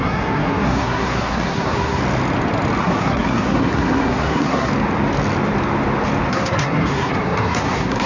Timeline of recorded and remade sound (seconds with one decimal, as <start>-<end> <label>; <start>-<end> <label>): 0.0-2.0 remade; 2.0-2.8 recorded; 2.8-4.7 remade; 4.7-6.3 recorded; 6.3-8.1 remade